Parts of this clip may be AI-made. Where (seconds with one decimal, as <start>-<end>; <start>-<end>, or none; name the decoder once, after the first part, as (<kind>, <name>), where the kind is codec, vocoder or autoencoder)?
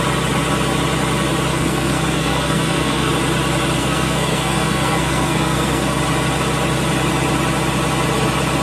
1.5-3.1 (codec, SNAC); 3.8-6.0